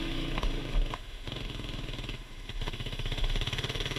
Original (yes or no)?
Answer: no